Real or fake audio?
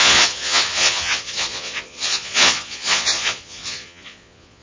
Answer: fake